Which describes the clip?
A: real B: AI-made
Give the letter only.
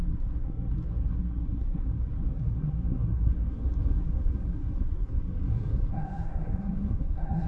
B